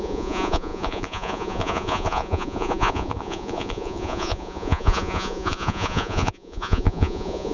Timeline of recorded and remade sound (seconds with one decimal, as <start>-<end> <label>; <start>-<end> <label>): 0.0-7.5 remade